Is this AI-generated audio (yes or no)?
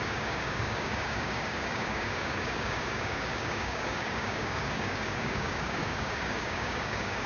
yes